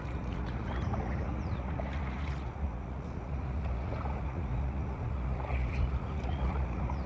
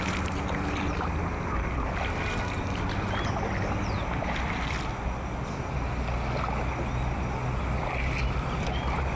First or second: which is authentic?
second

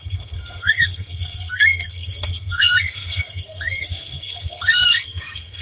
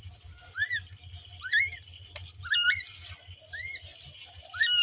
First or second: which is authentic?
second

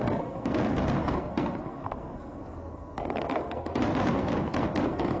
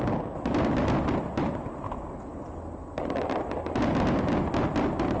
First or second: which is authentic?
second